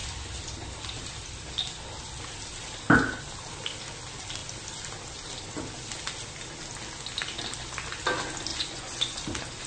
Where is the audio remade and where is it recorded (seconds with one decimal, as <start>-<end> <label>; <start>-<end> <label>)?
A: 0.0-8.5 recorded; 8.5-9.2 remade; 9.2-9.7 recorded